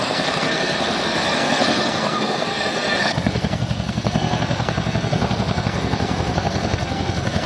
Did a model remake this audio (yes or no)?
yes